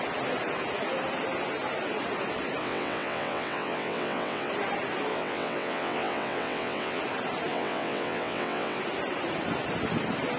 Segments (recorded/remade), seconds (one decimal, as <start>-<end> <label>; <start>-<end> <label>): 0.0-2.6 recorded; 2.6-4.5 remade; 4.5-5.1 recorded; 5.1-7.0 remade; 7.0-7.5 recorded; 7.5-8.8 remade; 8.8-10.4 recorded